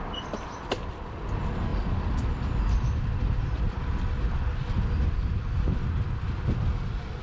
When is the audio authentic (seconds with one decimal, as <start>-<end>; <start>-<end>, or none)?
0.0-1.7; 6.0-7.2